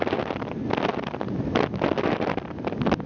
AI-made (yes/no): no